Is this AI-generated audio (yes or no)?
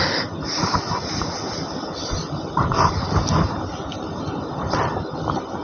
no